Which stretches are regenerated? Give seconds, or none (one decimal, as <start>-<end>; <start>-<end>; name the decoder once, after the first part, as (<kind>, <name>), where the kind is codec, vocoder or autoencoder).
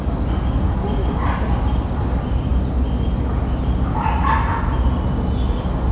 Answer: none